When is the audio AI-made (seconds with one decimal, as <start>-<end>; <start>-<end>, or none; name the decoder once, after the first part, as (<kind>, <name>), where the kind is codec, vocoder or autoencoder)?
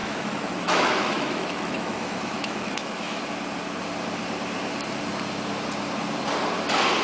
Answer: 0.0-3.2 (autoencoder, DAC-VAE)